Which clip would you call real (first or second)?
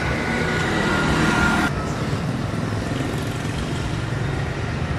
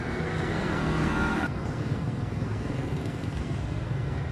first